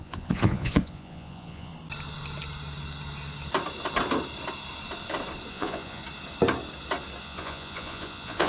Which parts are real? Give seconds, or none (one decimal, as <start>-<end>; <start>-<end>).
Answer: 1.7-5.5; 6.0-7.2